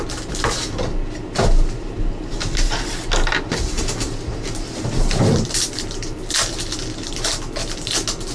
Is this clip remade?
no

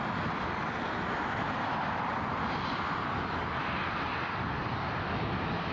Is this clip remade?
no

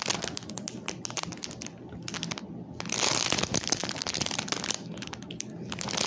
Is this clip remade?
no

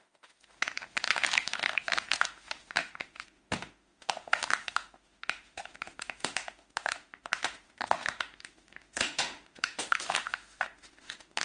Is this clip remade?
yes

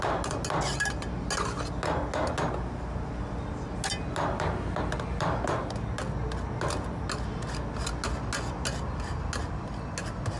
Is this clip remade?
no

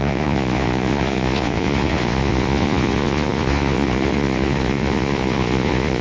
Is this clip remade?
yes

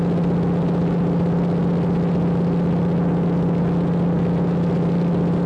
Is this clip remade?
no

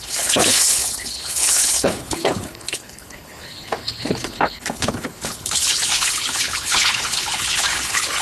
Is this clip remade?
yes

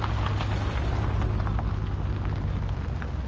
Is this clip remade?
no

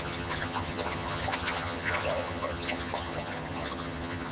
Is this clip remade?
yes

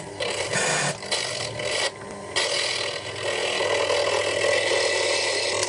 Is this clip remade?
no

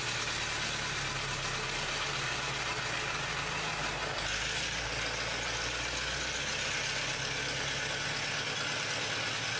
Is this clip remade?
no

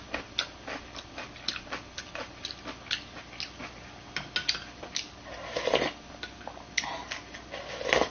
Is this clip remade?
no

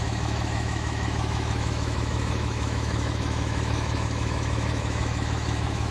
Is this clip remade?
yes